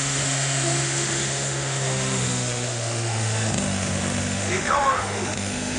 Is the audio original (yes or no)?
no